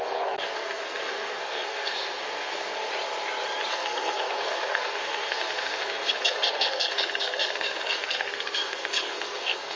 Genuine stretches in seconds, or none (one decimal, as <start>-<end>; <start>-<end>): 2.9-3.7